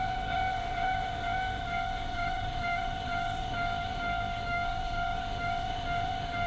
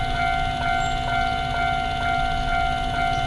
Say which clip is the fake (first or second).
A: first